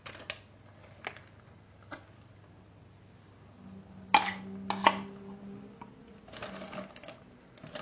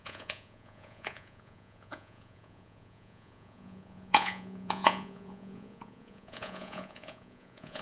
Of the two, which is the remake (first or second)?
second